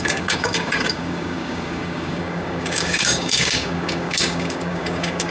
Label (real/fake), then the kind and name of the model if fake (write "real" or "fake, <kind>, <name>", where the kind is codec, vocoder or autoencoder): fake, codec, DAC